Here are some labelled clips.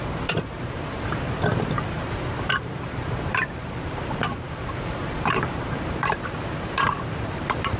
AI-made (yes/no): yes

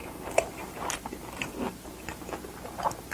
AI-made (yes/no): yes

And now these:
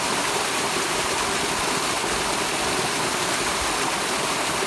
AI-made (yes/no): no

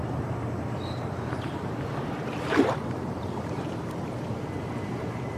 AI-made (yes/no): yes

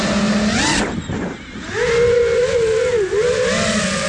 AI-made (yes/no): no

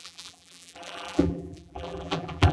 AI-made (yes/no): yes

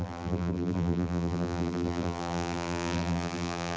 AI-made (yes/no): yes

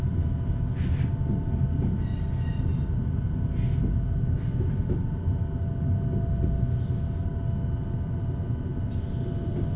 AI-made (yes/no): no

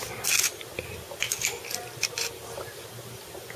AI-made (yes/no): no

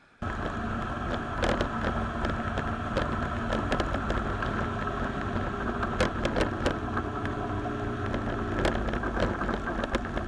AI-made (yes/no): no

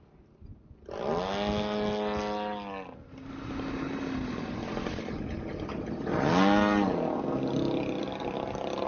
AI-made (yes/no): no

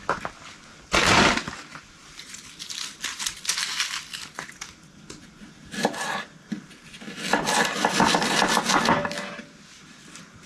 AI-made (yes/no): no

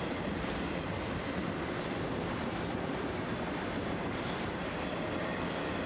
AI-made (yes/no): yes